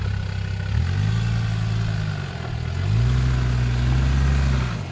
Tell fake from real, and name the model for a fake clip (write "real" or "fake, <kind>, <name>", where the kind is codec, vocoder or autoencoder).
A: real